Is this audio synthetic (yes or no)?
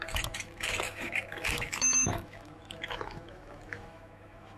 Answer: yes